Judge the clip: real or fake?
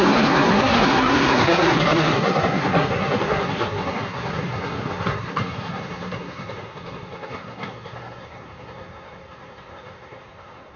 fake